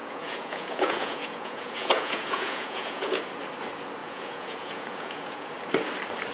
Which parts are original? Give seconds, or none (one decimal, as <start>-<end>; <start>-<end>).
3.2-4.0; 5.5-6.3